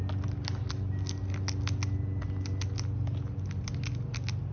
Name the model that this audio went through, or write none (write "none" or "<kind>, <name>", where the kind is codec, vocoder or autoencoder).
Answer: none